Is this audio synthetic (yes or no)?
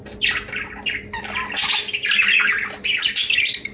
no